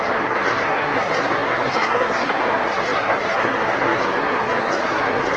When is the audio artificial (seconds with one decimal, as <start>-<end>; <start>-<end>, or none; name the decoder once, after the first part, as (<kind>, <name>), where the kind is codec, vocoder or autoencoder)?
0.0-5.4 (codec, SNAC)